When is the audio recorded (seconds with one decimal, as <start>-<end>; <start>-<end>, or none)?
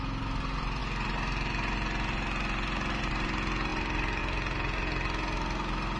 0.0-3.7; 4.2-6.0